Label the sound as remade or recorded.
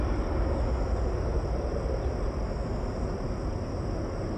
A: recorded